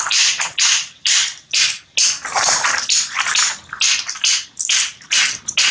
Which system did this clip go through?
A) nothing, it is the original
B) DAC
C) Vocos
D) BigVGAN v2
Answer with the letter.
A